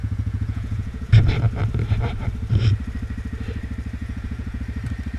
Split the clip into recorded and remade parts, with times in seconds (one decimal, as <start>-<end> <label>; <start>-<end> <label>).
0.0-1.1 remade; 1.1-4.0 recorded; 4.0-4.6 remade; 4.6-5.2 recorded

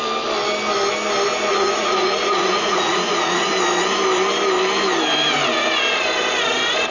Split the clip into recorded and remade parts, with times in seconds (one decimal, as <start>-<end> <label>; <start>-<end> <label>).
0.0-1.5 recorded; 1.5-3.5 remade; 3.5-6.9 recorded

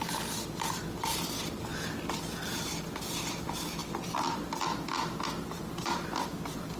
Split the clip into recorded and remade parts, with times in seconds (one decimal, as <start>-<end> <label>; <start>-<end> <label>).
0.0-1.7 remade; 1.7-2.2 recorded; 2.2-3.8 remade; 3.8-5.6 recorded; 5.6-6.8 remade